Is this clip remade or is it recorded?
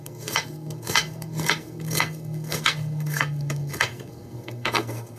remade